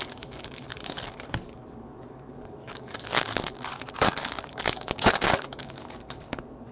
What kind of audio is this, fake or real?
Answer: fake